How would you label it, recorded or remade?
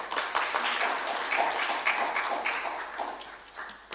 recorded